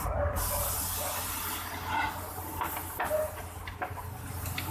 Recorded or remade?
recorded